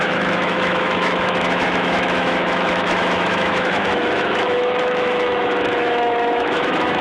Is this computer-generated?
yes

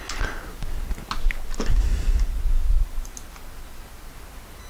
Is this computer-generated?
no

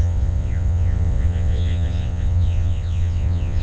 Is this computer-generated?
yes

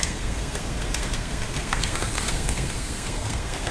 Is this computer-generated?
yes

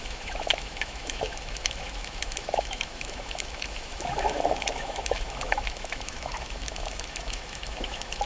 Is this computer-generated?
yes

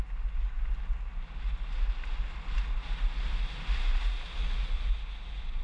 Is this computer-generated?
no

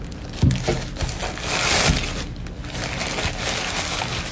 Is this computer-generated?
no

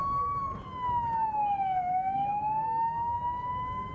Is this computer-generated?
no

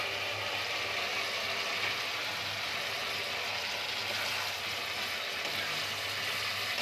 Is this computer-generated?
no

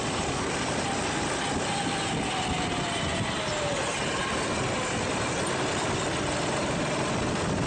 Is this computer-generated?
no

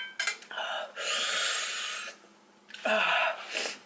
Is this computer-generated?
no